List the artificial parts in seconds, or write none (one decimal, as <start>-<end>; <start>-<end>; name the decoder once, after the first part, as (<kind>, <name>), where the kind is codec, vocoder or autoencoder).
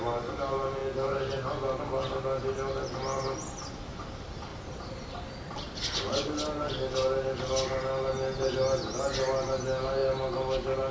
none